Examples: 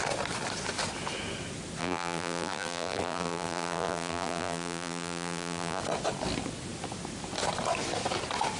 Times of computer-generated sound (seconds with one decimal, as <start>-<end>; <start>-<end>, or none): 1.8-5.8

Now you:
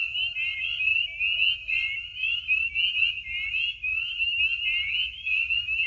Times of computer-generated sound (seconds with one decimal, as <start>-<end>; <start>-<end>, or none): none

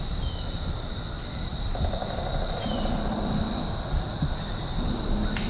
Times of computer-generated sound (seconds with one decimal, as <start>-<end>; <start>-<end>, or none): none

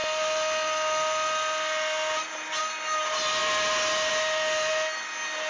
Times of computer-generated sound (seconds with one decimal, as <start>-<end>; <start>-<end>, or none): none

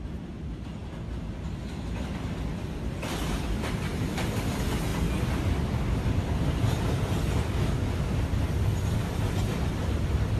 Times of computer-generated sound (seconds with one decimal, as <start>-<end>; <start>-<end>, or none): none